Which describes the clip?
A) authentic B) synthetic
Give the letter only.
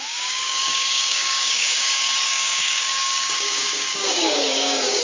B